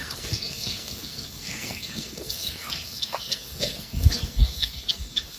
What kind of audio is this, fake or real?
fake